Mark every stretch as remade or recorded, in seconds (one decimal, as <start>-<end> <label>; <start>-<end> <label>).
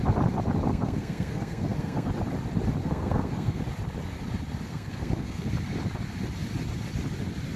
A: 0.0-0.7 recorded; 0.7-2.1 remade; 2.1-2.8 recorded; 2.8-3.6 remade; 3.6-4.7 recorded; 4.7-5.5 remade; 5.5-7.6 recorded